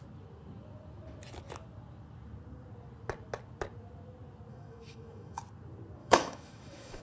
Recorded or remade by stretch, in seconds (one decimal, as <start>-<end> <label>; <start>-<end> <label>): 0.0-4.5 recorded; 4.5-5.4 remade; 5.4-6.0 recorded; 6.0-7.0 remade